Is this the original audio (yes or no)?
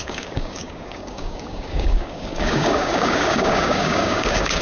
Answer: no